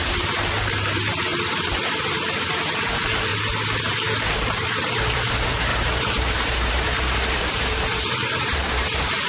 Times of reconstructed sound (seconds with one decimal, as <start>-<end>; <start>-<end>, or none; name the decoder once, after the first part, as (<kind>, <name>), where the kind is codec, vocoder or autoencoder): 0.0-1.3 (vocoder, BigVGAN v2); 2.0-3.3; 4.9-9.3